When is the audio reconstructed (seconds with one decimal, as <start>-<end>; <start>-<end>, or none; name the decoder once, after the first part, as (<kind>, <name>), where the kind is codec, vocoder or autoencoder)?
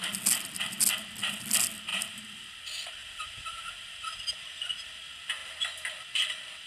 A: 1.9-2.5 (vocoder, BigVGAN v2); 3.0-4.2